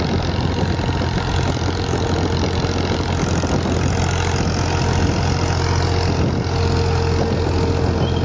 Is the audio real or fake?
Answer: real